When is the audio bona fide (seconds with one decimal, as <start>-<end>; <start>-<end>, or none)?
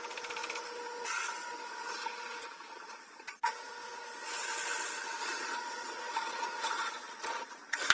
0.0-2.4; 3.4-5.2